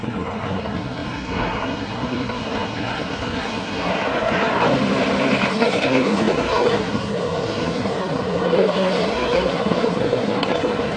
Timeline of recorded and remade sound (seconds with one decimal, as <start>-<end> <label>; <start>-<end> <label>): 0.0-4.5 remade; 4.5-5.5 recorded; 5.5-11.0 remade